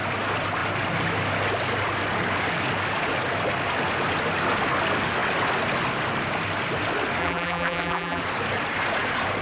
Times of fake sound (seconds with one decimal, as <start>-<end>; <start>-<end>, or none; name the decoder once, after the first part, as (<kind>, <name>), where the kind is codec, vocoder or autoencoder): 7.2-8.2 (vocoder, BigVGAN v2)